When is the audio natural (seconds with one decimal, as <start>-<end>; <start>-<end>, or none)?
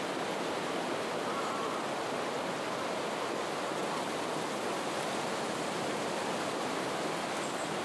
0.0-7.8